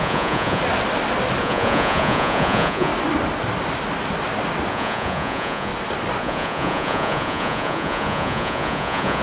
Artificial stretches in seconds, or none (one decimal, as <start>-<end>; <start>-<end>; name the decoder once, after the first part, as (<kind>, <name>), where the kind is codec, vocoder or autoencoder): 0.0-0.6 (vocoder, Vocos); 1.4-2.9; 4.7-5.7; 6.2-9.2

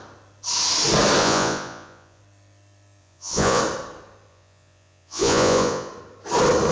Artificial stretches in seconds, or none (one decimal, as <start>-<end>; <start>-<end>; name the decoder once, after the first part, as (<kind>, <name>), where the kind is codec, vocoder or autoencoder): 1.2-2.2 (vocoder, Vocos); 3.0-3.6; 4.3-5.9

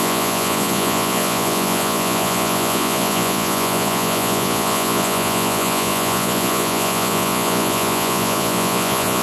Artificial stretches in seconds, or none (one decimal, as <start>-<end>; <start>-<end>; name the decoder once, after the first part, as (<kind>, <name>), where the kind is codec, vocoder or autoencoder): 0.0-9.2 (vocoder, Vocos)

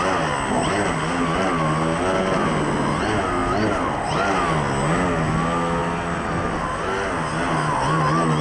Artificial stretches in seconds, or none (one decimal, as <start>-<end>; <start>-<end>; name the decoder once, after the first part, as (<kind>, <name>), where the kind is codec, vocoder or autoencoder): none

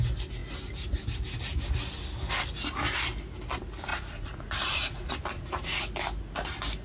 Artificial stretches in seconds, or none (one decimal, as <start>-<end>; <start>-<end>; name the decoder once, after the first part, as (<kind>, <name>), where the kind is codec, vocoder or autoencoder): 3.9-5.8 (vocoder, Vocos)

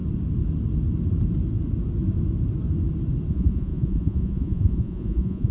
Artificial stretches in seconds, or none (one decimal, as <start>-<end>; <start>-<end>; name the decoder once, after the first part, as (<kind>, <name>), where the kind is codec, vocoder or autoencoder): 3.3-5.5 (vocoder, Vocos)

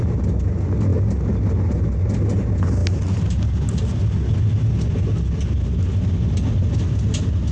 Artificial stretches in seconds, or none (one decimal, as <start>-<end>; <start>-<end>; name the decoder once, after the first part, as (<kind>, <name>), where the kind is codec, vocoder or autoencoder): none